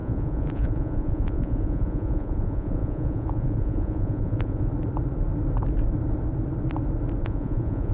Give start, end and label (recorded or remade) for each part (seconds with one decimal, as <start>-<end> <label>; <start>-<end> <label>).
0.0-4.7 remade; 4.7-7.2 recorded; 7.2-7.9 remade